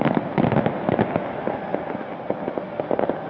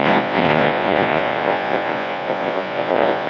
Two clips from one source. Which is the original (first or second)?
first